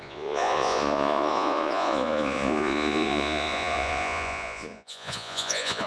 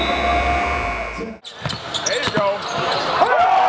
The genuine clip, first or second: second